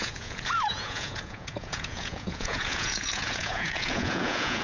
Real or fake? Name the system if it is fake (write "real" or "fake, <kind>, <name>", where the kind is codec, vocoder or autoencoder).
fake, vocoder, Vocos